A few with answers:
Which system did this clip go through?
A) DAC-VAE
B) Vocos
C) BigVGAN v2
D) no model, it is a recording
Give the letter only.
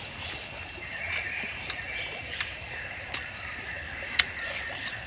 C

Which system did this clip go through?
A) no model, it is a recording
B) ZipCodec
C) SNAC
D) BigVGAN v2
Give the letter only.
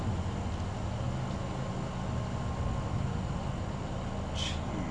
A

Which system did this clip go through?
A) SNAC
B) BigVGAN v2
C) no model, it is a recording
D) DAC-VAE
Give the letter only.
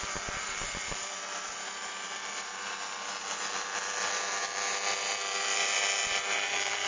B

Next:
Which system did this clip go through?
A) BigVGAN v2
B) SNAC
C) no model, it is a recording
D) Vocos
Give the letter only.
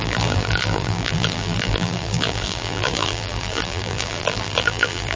A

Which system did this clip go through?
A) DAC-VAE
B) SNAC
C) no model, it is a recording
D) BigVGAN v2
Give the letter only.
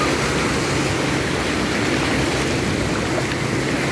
C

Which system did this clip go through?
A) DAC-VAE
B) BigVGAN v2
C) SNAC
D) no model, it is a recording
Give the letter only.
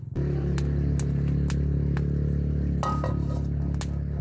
D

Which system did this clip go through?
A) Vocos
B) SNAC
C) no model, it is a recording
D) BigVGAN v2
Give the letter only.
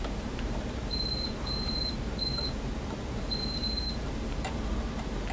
D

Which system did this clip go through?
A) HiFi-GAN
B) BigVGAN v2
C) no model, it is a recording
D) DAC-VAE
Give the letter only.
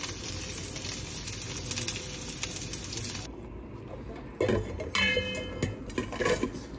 C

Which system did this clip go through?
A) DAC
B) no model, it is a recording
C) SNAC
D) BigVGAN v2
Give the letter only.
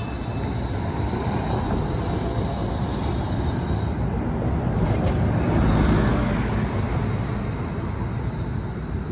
B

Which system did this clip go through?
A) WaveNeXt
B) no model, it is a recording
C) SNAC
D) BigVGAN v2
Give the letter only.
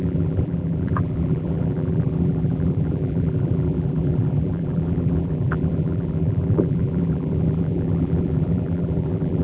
D